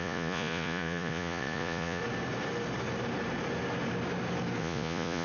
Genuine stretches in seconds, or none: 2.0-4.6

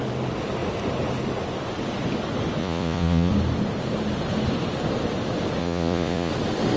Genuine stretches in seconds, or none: 0.0-2.6; 3.3-5.6; 6.3-6.8